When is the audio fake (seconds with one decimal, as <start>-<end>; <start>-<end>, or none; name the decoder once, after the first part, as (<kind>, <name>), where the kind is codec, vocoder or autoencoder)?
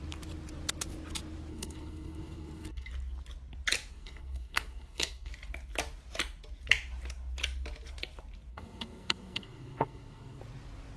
1.5-2.9 (codec, SNAC); 3.9-5.3; 8.5-10.4